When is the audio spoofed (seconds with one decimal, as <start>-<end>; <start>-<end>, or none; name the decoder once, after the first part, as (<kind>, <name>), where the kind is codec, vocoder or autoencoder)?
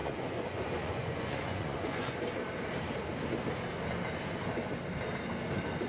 0.0-2.2 (vocoder, Vocos)